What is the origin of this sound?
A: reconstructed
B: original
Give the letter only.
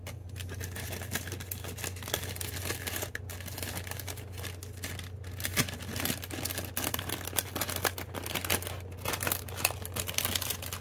B